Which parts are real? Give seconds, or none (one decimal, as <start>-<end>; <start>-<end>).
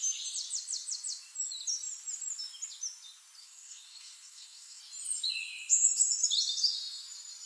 0.0-3.4; 4.8-7.5